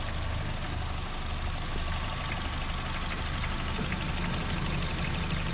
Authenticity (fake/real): real